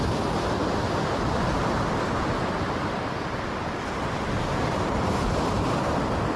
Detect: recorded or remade remade